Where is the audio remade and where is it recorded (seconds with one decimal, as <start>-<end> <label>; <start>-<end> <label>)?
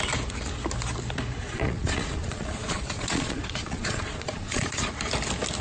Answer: 0.0-1.4 recorded; 1.4-4.8 remade; 4.8-5.6 recorded